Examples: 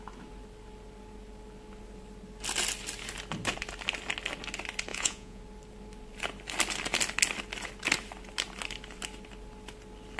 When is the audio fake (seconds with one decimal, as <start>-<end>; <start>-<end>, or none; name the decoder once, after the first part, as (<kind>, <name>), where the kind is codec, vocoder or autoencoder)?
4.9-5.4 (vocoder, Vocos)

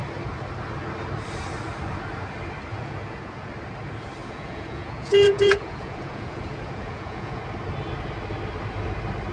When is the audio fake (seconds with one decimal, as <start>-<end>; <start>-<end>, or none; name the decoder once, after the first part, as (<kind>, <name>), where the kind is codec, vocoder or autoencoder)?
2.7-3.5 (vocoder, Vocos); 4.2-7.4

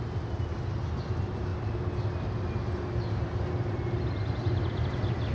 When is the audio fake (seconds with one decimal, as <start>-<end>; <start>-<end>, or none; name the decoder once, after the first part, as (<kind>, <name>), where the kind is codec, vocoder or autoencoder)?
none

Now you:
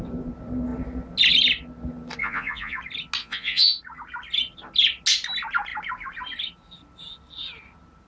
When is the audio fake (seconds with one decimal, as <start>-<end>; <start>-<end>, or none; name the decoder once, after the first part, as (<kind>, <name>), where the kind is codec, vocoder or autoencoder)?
2.2-2.8 (vocoder, Vocos); 3.2-3.8

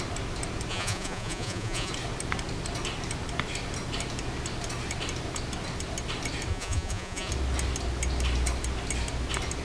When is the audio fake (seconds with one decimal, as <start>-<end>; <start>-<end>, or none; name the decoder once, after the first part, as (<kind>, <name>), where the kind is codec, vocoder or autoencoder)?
0.7-1.9 (vocoder, Vocos); 6.5-7.3

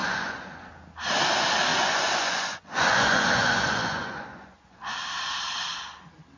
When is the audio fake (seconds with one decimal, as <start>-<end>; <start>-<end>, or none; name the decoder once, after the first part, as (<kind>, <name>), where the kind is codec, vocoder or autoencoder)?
0.0-0.7 (vocoder, Vocos); 1.7-4.9

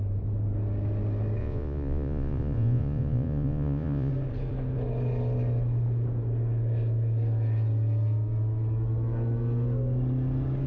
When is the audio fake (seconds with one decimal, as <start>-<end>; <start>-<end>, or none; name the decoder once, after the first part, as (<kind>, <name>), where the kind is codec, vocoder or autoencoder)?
1.4-4.1 (vocoder, Vocos)